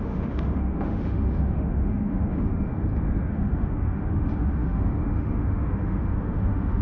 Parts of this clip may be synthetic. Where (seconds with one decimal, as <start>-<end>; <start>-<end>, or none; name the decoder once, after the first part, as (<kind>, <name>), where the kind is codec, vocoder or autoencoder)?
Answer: 0.0-2.7 (autoencoder, DAC-VAE); 3.3-6.8